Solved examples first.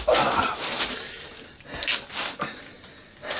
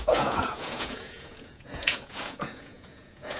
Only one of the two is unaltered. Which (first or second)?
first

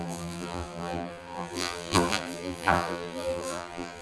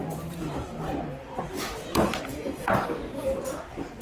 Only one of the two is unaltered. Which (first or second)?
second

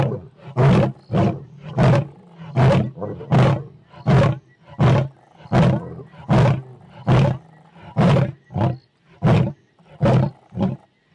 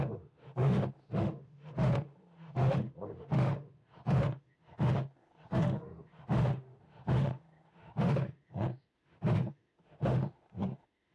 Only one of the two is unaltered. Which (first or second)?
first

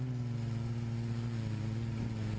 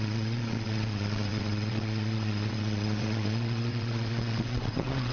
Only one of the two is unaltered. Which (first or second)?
first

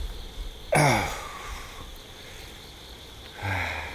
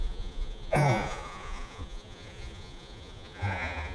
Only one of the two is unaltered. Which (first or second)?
first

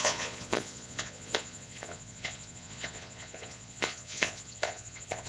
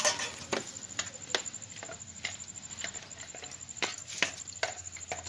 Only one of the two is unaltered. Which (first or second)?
second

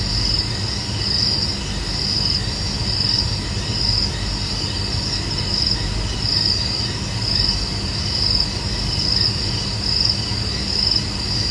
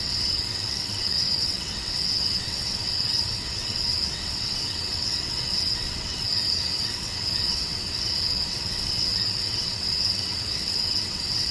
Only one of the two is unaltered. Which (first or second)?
first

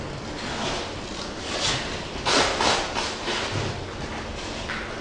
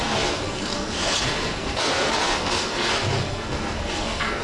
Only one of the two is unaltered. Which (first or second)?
first